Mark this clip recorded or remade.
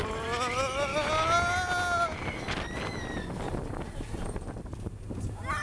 recorded